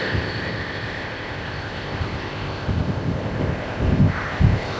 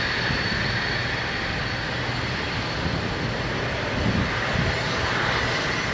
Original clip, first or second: second